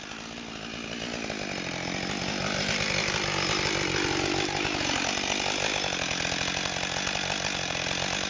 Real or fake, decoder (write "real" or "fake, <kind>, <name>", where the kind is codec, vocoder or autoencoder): real